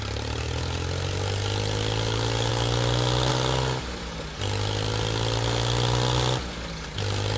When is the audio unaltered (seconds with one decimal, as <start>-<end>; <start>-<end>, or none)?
0.0-7.4